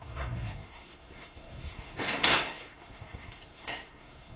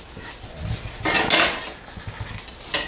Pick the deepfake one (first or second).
first